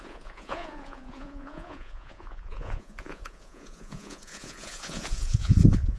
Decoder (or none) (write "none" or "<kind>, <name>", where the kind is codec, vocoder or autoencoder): vocoder, Vocos